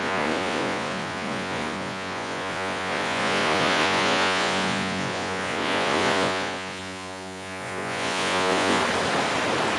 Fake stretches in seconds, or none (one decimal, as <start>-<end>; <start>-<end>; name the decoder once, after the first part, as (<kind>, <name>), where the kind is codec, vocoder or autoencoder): 0.0-8.8 (vocoder, Vocos)